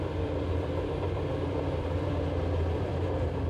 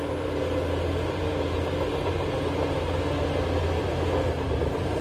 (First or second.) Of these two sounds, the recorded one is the second